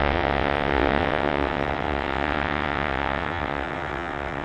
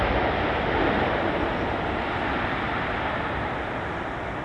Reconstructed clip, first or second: first